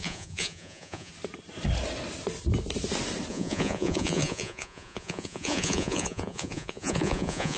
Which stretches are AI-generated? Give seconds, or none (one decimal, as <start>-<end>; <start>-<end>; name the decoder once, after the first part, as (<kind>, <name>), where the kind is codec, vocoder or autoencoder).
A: 0.0-1.1 (vocoder, Vocos); 3.3-7.6